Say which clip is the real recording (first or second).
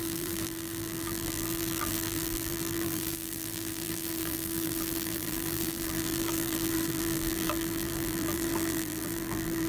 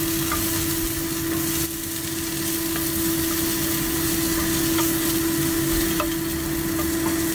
second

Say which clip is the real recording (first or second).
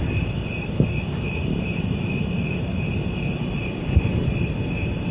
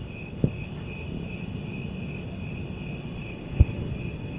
second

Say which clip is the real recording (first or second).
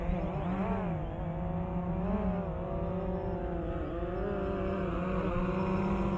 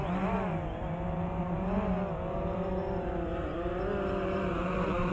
first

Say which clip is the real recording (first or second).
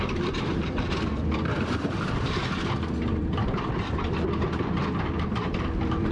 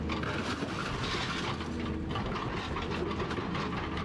second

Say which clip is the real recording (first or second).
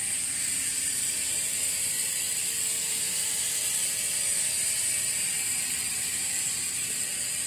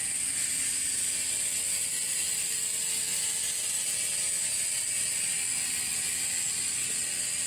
second